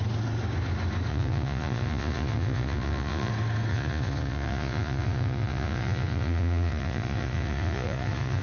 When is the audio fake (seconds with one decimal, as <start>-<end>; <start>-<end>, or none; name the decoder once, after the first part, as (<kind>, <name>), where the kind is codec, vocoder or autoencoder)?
1.1-3.3 (vocoder, Vocos); 3.7-8.4